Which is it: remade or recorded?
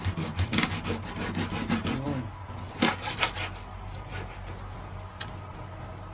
recorded